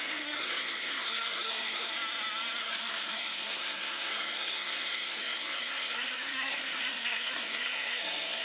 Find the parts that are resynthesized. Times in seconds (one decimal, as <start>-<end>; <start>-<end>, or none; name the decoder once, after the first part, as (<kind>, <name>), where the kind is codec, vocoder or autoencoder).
0.0-1.9 (codec, SNAC); 2.6-8.4